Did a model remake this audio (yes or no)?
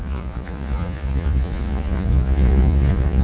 yes